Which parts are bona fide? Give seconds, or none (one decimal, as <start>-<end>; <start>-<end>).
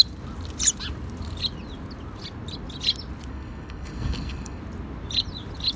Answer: 0.0-3.3; 4.6-5.8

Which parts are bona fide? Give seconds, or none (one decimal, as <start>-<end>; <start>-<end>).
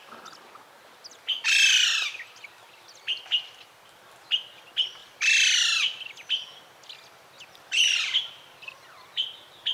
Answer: 0.0-9.7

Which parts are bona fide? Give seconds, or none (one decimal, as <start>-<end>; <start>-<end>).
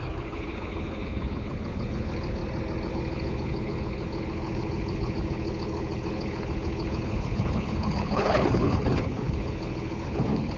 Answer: 2.4-2.9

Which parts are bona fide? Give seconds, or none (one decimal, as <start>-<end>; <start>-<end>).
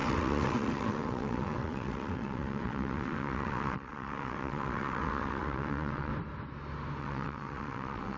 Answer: 6.1-7.0